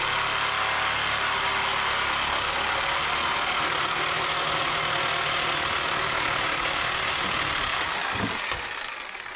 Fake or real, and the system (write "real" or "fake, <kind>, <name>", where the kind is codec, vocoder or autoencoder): real